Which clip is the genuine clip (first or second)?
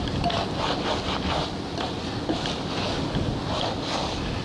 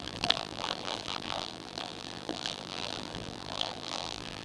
first